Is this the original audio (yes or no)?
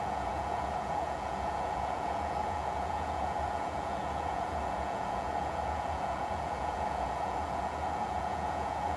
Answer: no